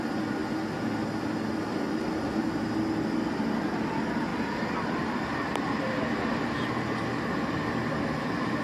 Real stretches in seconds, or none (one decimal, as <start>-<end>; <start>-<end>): 0.0-4.3; 6.5-8.6